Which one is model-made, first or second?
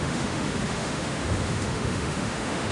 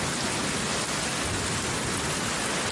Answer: first